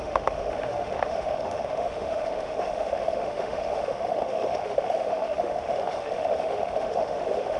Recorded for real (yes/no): no